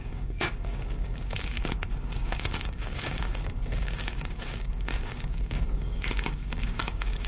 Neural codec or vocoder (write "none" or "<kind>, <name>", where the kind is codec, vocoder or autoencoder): codec, DAC